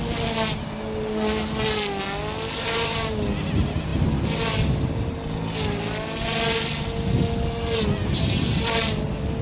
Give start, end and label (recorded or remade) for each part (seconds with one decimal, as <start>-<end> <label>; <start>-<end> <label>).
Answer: 0.0-9.4 recorded